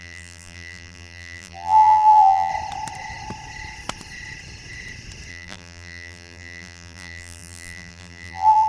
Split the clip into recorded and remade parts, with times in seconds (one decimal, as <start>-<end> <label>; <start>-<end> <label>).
0.0-2.5 remade; 2.5-5.3 recorded; 5.3-8.7 remade